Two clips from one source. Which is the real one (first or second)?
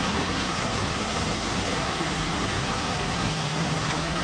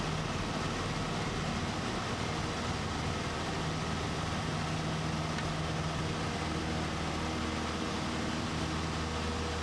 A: second